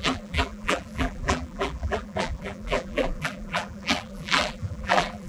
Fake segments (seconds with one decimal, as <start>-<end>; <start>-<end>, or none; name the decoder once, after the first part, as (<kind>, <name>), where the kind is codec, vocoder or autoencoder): 0.0-5.3 (vocoder, BigVGAN v2)